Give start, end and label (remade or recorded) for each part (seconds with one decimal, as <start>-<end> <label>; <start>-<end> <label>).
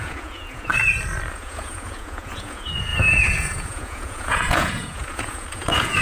0.0-0.7 remade; 0.7-1.3 recorded; 1.3-6.0 remade